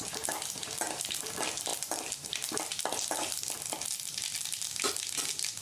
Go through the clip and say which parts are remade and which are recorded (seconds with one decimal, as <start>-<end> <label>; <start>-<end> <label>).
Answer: 0.0-5.6 recorded

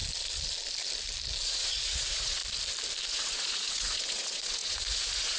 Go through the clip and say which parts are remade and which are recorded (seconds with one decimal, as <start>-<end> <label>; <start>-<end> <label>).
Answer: 0.0-1.5 recorded; 1.5-2.4 remade; 2.4-3.1 recorded; 3.1-5.4 remade

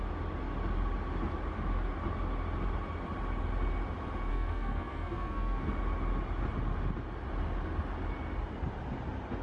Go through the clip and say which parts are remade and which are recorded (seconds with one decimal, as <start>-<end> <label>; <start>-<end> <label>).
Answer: 0.0-4.3 recorded; 4.3-5.7 remade; 5.7-9.4 recorded

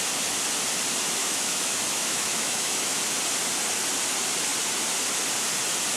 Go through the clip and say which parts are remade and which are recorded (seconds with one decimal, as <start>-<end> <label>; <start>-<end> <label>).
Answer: 0.0-1.2 recorded; 1.2-3.0 remade; 3.0-6.0 recorded